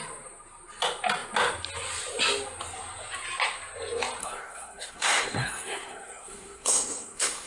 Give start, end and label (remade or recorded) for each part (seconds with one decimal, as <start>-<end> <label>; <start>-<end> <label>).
0.0-4.2 recorded; 4.2-7.5 remade